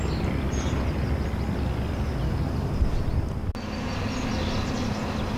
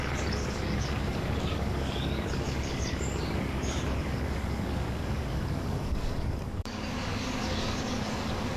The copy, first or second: second